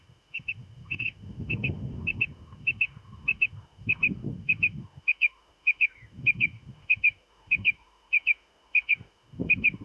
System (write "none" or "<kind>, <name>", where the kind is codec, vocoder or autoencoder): autoencoder, DAC-VAE